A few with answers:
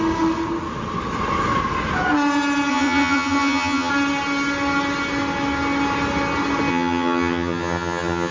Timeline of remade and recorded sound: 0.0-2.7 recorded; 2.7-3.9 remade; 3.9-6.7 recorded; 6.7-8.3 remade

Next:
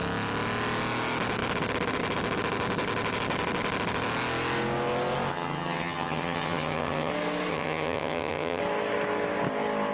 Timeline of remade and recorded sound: 0.0-5.3 recorded; 5.3-7.1 remade; 7.1-7.5 recorded; 7.5-8.6 remade; 8.6-9.9 recorded

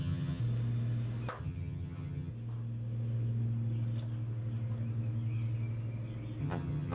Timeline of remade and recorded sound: 0.0-0.4 remade; 0.4-1.4 recorded; 1.4-2.3 remade; 2.3-6.4 recorded; 6.4-6.9 remade